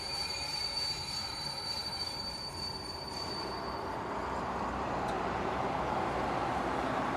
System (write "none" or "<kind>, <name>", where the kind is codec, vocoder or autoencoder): vocoder, BigVGAN v2